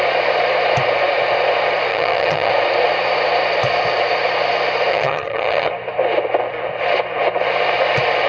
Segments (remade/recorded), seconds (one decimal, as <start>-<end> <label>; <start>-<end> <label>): 0.0-1.9 recorded; 1.9-2.5 remade; 2.5-4.9 recorded; 4.9-5.7 remade; 5.7-8.3 recorded